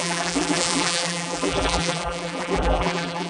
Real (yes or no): no